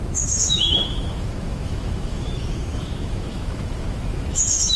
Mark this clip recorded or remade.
remade